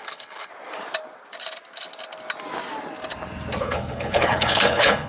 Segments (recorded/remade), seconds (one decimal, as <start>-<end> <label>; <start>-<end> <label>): 0.0-0.5 remade; 0.5-3.6 recorded; 3.6-5.1 remade